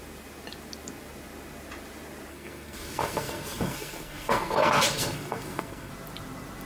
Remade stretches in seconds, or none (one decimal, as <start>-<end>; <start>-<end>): 2.3-5.9